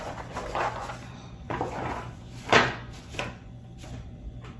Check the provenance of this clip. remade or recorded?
remade